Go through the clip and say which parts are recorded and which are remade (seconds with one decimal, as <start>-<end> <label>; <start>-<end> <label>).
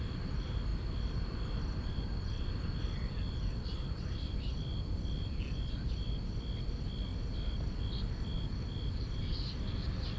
0.0-10.2 recorded